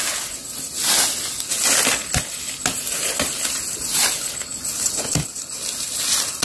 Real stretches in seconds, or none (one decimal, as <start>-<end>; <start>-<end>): 0.0-6.4